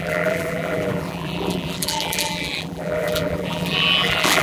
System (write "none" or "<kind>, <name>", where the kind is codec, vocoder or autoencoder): vocoder, BigVGAN v2